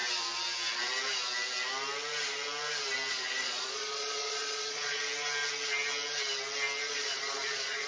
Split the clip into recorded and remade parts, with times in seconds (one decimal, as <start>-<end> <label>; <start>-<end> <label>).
0.0-3.1 recorded; 3.1-5.0 remade; 5.0-6.9 recorded; 6.9-7.9 remade